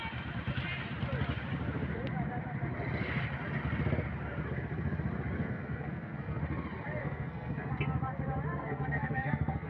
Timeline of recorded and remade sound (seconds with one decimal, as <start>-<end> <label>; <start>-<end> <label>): 0.0-5.4 recorded; 5.4-6.4 remade; 6.4-7.0 recorded; 7.0-7.7 remade; 7.7-8.5 recorded; 8.5-9.7 remade